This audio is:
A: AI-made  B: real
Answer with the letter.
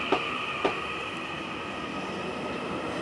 B